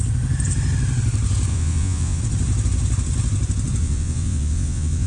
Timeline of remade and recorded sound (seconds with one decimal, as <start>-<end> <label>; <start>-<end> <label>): 0.0-1.5 recorded; 1.5-2.2 remade; 2.2-3.8 recorded; 3.8-5.1 remade